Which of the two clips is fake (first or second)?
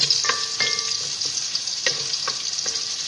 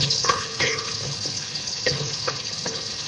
second